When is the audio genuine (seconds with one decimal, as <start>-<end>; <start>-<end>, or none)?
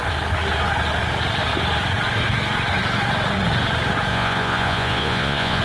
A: 0.0-4.1